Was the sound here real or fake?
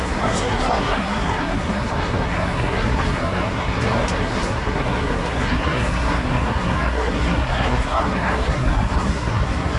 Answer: fake